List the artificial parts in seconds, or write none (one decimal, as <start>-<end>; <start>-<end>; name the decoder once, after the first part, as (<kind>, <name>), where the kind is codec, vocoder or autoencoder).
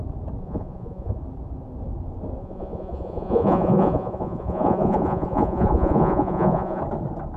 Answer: 0.4-1.2 (vocoder, Vocos); 2.4-6.8